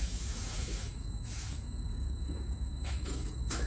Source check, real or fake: fake